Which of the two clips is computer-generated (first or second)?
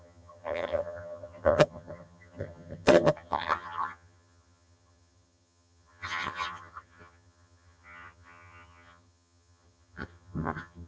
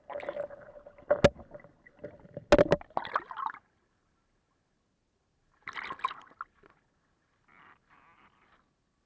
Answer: first